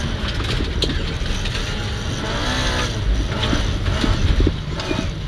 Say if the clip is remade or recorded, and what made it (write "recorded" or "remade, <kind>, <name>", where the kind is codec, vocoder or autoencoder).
recorded